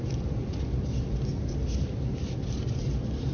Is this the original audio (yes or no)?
yes